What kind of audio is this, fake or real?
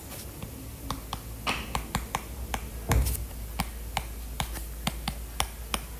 real